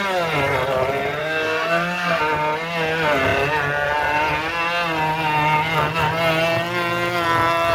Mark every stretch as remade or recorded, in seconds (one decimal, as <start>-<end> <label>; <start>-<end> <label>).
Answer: 0.0-1.2 recorded; 1.2-2.2 remade; 2.2-7.7 recorded